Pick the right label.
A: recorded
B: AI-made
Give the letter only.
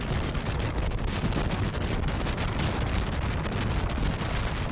A